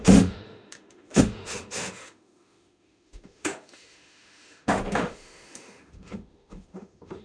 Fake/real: fake